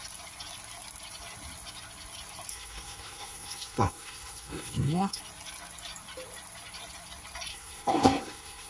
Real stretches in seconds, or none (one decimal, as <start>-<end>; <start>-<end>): 0.0-2.5; 5.2-7.5

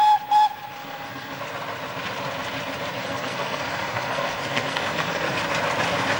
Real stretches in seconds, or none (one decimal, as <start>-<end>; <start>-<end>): 0.0-0.8; 1.4-3.0; 5.4-6.2

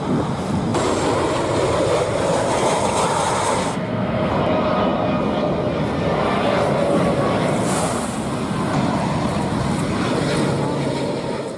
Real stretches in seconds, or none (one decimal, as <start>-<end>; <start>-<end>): 0.0-3.6; 4.3-11.6